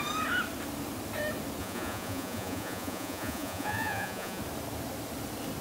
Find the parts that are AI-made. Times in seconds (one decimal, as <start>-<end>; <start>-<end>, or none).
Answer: 1.6-4.4